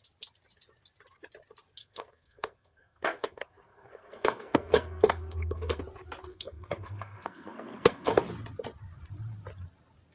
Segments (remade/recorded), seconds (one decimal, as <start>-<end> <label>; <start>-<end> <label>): 0.0-1.8 recorded; 1.8-5.8 remade; 5.8-6.3 recorded; 6.3-8.2 remade; 8.2-10.1 recorded